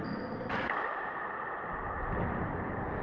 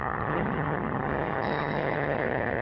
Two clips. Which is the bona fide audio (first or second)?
first